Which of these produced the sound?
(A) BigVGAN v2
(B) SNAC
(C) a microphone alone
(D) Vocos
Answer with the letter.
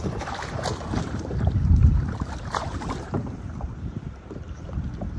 A